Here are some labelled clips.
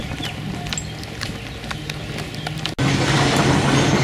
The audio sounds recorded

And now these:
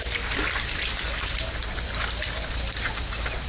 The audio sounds recorded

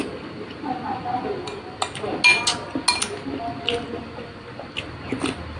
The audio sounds recorded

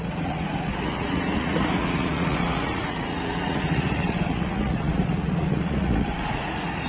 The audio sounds remade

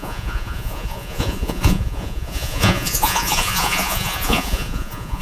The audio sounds remade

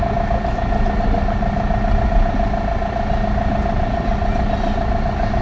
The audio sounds recorded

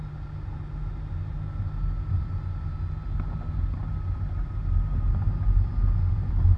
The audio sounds recorded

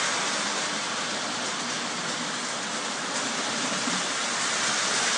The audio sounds recorded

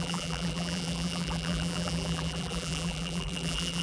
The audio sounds remade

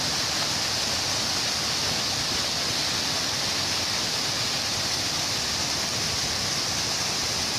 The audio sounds recorded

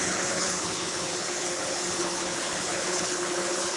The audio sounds remade